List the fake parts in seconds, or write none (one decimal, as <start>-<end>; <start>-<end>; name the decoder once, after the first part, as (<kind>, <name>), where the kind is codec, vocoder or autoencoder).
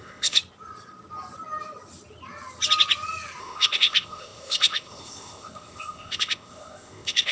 0.0-0.4 (codec, ZipCodec); 3.4-7.3